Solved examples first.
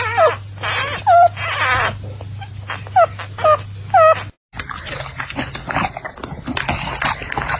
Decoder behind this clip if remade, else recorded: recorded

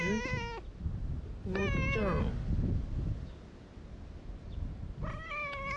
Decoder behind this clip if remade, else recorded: recorded